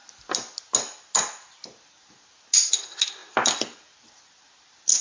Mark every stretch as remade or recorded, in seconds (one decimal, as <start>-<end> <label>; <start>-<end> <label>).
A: 0.0-5.0 recorded